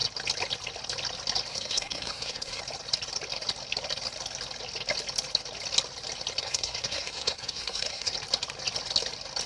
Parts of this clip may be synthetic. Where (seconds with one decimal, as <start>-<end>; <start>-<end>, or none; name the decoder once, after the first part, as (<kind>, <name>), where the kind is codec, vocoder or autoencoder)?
1.5-2.6 (codec, SNAC); 6.4-8.1